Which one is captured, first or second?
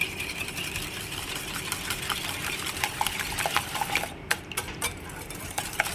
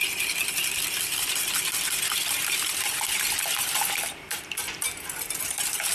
second